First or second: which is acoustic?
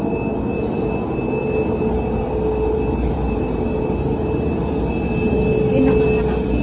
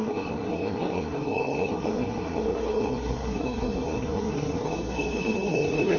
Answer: first